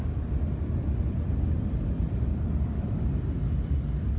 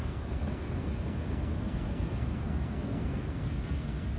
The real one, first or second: first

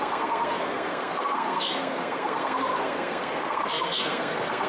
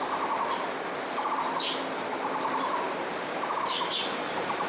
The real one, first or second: second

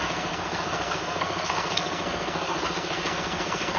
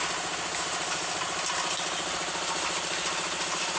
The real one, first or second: second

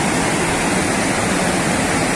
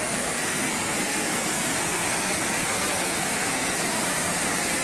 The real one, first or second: first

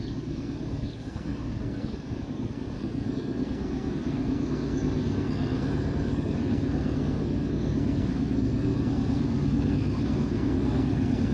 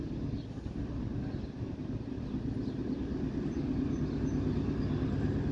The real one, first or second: second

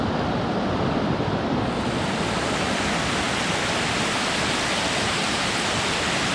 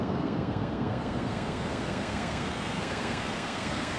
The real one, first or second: first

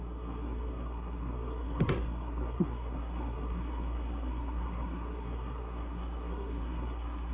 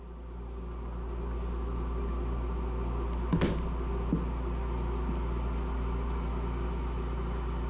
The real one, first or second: second